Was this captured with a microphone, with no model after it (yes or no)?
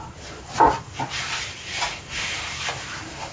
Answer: yes